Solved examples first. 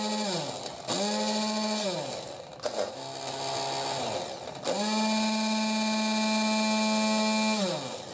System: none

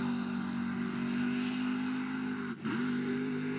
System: none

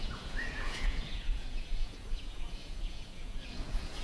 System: vocoder, Vocos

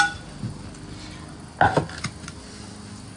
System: none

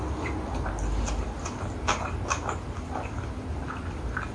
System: none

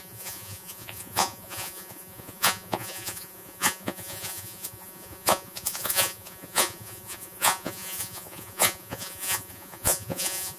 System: vocoder, Vocos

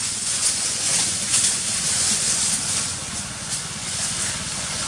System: vocoder, Vocos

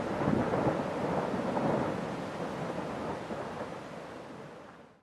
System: none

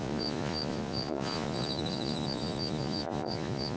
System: vocoder, Vocos